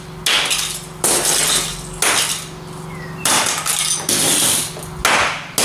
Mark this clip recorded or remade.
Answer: recorded